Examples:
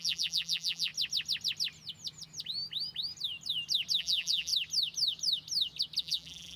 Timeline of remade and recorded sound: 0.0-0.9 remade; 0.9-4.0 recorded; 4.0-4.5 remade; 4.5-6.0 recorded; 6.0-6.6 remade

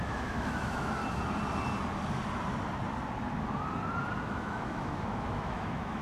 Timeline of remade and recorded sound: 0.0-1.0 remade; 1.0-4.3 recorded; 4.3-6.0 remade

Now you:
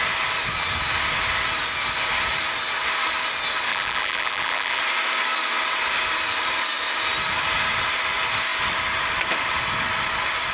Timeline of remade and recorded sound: 0.0-3.7 recorded; 3.7-4.8 remade; 4.8-10.5 recorded

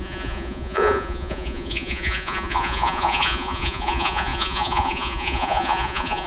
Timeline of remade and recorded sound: 0.0-6.3 remade

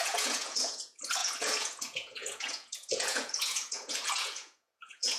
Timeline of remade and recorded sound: 0.0-5.2 remade

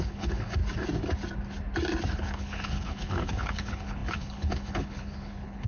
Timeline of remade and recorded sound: 0.0-0.6 remade; 0.6-2.1 recorded; 2.1-5.7 remade

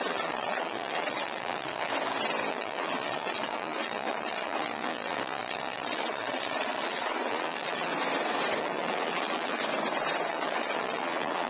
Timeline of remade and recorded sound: 0.0-1.9 remade; 1.9-2.5 recorded; 2.5-7.9 remade; 7.9-8.6 recorded; 8.6-9.6 remade; 9.6-10.3 recorded; 10.3-11.5 remade